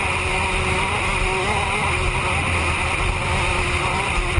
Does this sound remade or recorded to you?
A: recorded